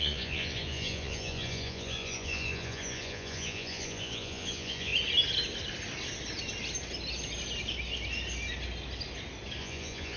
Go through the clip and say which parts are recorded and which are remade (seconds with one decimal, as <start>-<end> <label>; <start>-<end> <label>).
0.0-4.9 remade; 4.9-9.6 recorded; 9.6-10.2 remade